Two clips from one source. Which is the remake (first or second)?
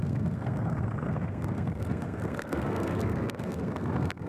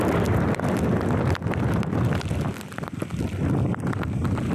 first